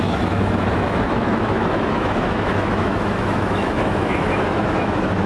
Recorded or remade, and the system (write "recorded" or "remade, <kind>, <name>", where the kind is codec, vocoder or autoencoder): remade, autoencoder, DAC-VAE